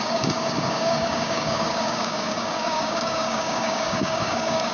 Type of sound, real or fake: fake